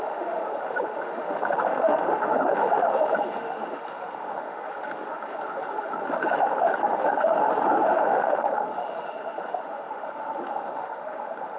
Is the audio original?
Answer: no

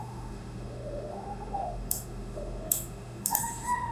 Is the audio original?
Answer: no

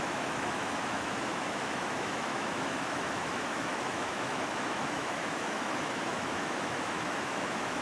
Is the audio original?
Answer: no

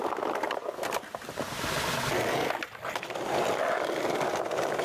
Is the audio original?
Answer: yes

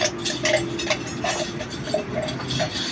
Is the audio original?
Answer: yes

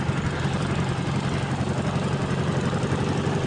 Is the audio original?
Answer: yes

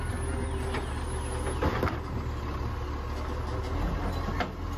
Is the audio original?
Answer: yes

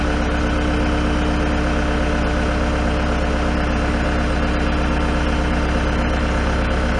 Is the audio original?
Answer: yes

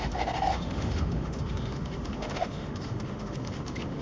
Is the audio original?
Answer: no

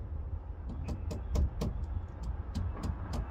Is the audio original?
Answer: yes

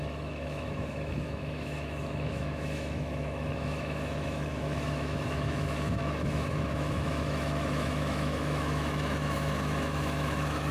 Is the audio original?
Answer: no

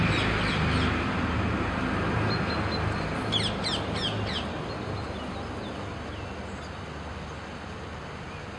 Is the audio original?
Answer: yes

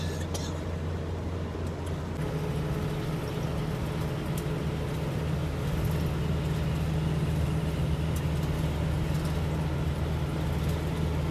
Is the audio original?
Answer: yes